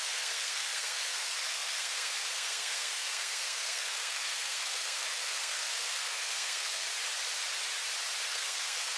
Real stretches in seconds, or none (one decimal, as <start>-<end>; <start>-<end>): 6.9-8.3